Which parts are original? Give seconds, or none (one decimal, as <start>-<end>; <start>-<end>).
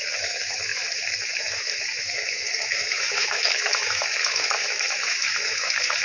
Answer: none